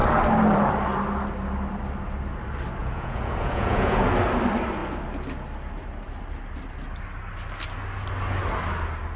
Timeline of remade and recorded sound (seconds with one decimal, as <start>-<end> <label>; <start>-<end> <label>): 0.0-2.8 recorded; 2.8-4.1 remade; 4.1-9.2 recorded